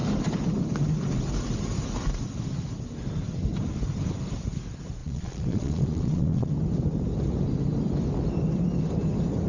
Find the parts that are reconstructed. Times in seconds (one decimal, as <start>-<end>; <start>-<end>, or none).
5.0-6.5